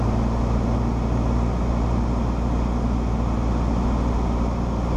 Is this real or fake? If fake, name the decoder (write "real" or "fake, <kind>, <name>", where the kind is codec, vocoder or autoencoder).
real